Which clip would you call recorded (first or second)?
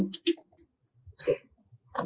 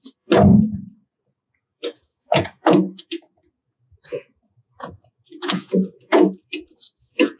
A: first